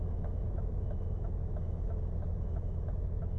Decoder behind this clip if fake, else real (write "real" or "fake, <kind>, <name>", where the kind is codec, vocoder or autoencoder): fake, autoencoder, DAC-VAE